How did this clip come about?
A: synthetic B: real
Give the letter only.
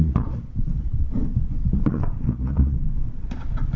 A